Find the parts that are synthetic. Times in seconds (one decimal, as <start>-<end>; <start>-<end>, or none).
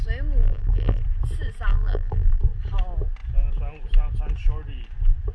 0.4-1.0; 1.7-2.4